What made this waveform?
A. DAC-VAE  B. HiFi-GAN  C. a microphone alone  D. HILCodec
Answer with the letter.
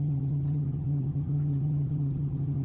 B